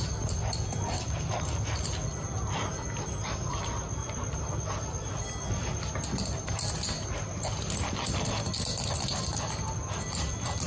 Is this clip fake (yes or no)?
no